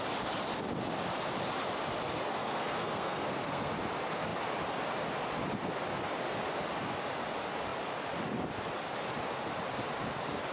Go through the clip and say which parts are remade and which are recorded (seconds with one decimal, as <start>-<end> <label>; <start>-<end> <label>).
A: 0.0-2.3 recorded; 2.3-3.7 remade; 3.7-10.5 recorded

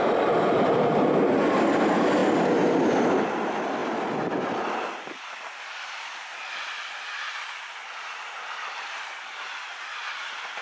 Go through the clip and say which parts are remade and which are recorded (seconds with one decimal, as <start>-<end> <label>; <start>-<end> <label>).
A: 0.0-10.6 recorded